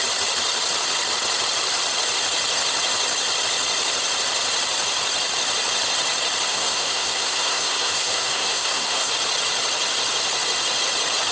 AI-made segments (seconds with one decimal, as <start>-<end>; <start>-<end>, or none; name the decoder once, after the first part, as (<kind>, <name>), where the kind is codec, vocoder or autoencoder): 6.5-9.1 (codec, SNAC)